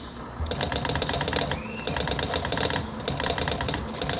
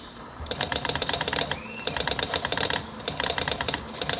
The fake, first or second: second